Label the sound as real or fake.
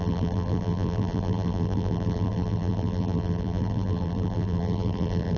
fake